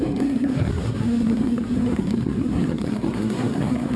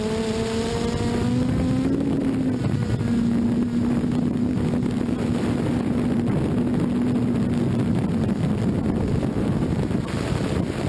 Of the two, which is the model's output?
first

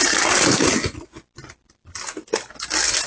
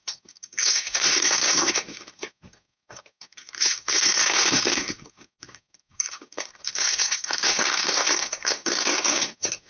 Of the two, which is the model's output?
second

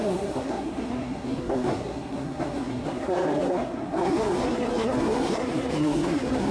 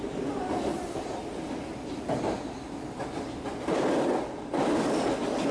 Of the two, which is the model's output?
first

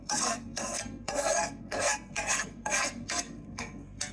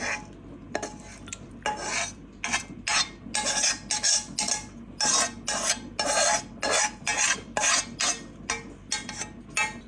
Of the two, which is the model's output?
first